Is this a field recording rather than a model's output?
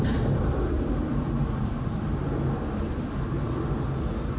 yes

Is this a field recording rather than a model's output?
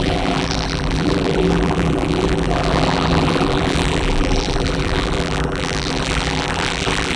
no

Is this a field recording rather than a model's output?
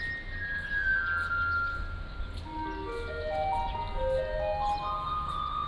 yes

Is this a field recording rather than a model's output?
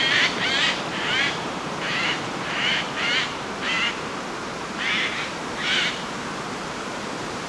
no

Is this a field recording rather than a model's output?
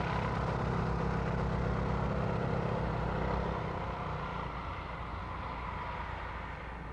yes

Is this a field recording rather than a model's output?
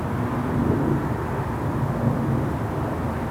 yes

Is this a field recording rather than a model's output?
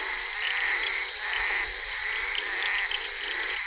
no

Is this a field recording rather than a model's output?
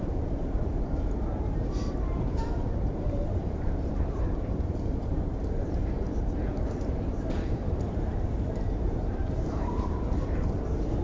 no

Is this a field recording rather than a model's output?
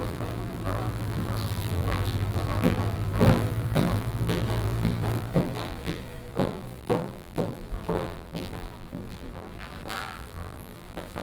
no